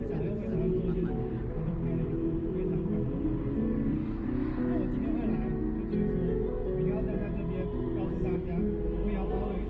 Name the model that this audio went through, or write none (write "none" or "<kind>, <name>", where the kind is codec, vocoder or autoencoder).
none